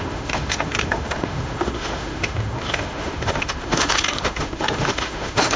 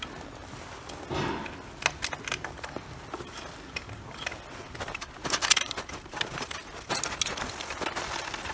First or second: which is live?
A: second